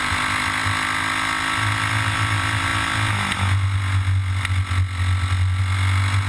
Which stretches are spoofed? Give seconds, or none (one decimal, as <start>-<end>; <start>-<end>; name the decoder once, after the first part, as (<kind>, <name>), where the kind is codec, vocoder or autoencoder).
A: none